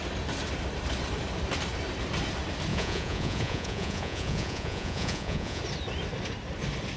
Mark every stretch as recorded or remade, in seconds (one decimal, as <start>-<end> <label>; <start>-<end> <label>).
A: 0.0-2.7 recorded; 2.7-5.6 remade; 5.6-7.0 recorded